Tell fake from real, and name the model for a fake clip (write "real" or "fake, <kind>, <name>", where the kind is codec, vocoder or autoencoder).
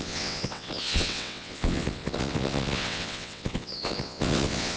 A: fake, vocoder, WaveNeXt